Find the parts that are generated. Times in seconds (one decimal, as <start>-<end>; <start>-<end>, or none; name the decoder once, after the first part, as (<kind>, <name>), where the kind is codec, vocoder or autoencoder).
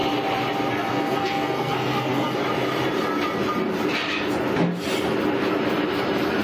0.7-2.4 (codec, SNAC)